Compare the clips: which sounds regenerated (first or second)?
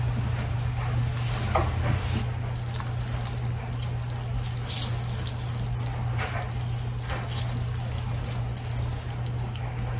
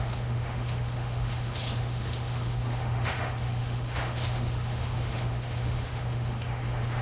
second